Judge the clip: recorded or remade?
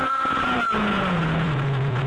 remade